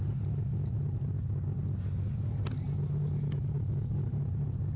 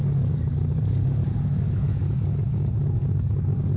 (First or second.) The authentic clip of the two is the first